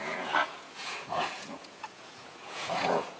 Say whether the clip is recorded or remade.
remade